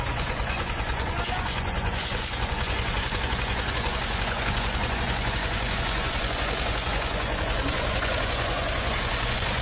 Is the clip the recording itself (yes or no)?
no